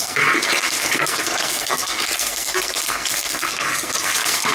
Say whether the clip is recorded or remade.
remade